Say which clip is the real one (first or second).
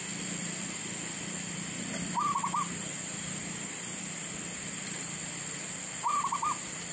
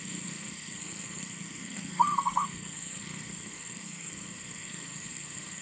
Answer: first